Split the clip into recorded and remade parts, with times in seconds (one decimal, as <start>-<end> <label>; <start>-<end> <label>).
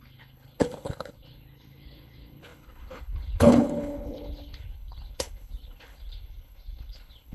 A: 0.0-7.3 remade